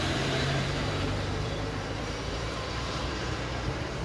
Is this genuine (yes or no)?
no